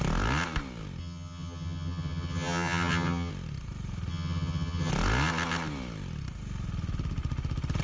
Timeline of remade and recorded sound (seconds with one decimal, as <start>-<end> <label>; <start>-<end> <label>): 0.0-1.0 recorded; 1.0-3.3 remade; 3.3-4.1 recorded; 4.1-4.9 remade; 4.9-7.8 recorded